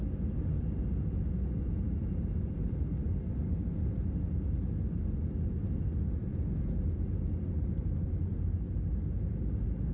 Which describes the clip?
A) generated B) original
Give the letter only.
B